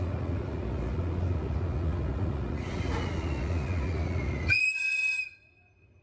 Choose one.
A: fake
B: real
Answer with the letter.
A